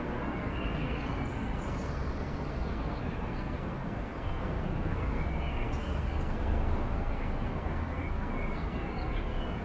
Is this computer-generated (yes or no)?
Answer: yes